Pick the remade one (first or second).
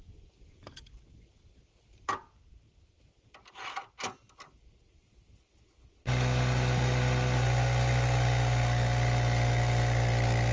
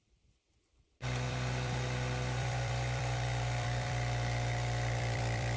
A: second